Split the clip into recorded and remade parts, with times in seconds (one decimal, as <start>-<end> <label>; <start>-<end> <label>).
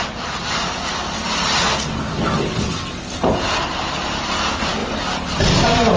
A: 0.0-6.0 recorded